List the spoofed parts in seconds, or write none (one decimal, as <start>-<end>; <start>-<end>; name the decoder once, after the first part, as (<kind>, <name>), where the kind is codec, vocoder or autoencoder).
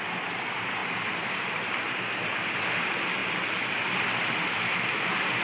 none